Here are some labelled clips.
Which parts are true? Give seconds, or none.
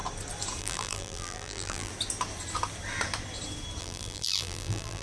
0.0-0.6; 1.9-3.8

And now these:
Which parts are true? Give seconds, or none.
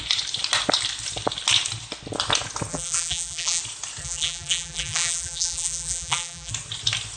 0.0-2.7; 3.6-4.0; 6.5-7.2